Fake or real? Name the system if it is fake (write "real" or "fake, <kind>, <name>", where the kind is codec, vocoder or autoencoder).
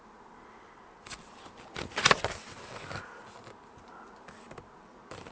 real